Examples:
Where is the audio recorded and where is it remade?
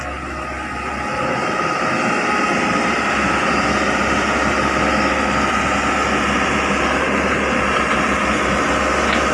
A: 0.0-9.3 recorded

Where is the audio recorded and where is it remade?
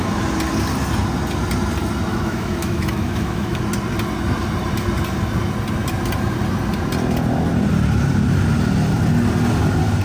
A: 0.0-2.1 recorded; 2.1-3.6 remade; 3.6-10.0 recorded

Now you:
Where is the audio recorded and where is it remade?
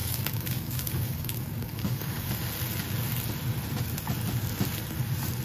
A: 0.0-2.3 remade; 2.3-5.4 recorded